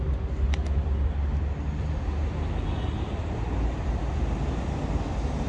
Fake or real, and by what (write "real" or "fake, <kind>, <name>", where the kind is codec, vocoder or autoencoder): real